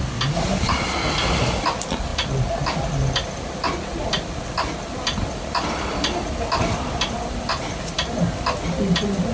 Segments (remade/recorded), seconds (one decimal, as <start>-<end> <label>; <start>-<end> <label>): 0.0-9.3 recorded